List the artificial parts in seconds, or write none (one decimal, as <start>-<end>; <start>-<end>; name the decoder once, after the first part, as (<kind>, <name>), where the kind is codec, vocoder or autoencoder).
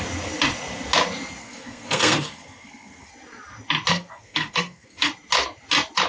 1.4-3.1 (codec, SNAC); 3.9-5.1